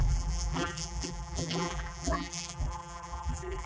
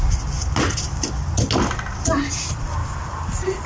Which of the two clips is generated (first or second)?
first